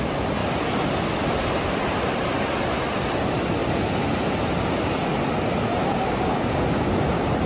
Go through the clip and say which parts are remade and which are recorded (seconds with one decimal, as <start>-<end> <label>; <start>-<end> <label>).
0.0-5.8 recorded; 5.8-6.6 remade; 6.6-7.5 recorded